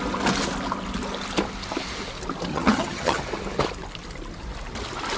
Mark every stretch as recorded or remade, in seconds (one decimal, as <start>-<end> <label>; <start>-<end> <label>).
0.0-2.5 recorded; 2.5-3.2 remade; 3.2-5.2 recorded